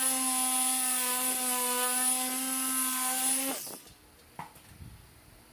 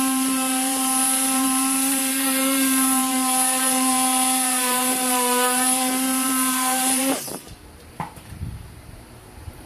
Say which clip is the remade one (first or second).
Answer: second